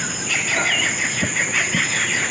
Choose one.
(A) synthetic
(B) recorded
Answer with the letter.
B